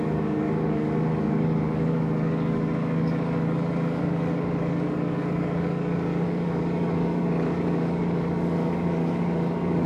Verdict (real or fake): fake